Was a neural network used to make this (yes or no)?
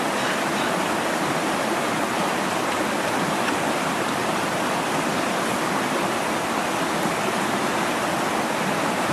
no